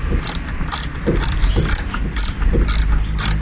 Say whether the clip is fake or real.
real